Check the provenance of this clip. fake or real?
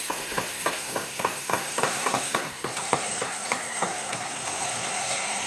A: fake